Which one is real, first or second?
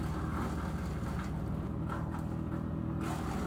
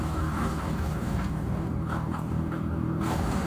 first